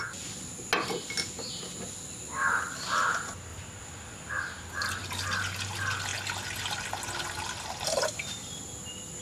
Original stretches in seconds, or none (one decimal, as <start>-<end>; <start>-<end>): 0.0-9.2